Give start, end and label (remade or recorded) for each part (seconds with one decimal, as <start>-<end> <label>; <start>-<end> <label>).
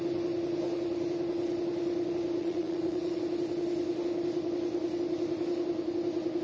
0.0-2.4 recorded; 2.4-3.2 remade; 3.2-6.4 recorded